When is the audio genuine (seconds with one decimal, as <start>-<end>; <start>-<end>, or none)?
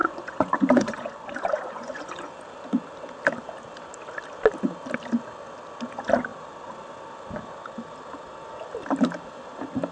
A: 2.3-9.9